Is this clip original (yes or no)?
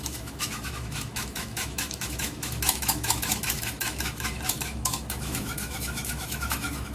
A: no